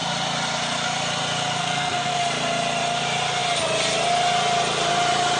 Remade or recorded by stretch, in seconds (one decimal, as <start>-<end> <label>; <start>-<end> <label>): 0.0-1.6 recorded; 1.6-2.2 remade; 2.2-5.4 recorded